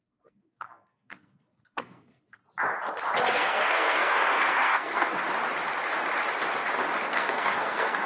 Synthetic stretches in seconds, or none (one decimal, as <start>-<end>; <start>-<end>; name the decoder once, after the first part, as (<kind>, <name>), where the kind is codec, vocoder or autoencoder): 0.0-2.4 (codec, SNAC); 3.3-5.1; 7.1-8.1